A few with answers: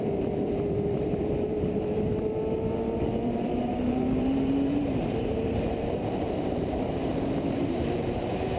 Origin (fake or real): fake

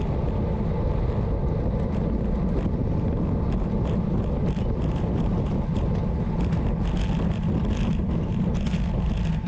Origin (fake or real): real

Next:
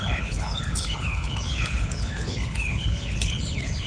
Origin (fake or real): fake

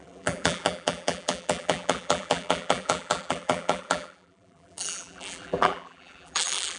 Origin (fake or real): fake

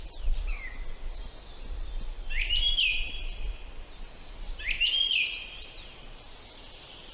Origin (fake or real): real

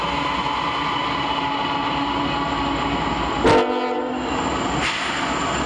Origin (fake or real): real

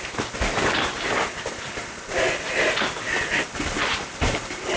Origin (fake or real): real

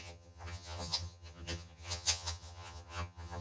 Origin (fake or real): fake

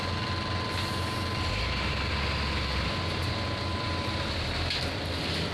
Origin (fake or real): real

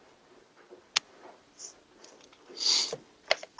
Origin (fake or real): real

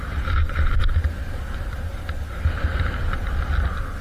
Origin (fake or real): real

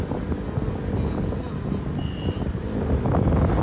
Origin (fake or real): real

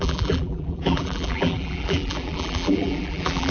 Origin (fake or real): fake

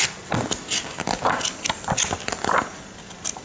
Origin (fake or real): real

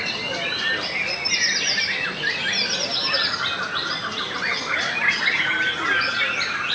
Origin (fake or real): real